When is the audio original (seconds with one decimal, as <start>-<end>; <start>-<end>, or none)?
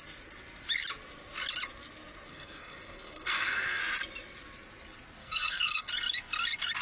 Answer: 0.0-2.3; 3.8-5.2; 5.9-6.8